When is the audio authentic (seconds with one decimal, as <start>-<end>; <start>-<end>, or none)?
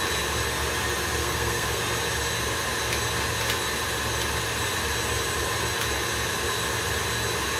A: 0.0-1.2; 1.8-7.6